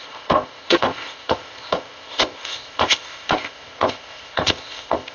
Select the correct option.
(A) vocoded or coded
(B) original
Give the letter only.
A